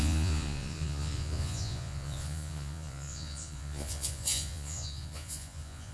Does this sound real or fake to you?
fake